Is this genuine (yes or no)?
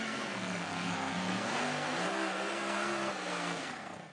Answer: no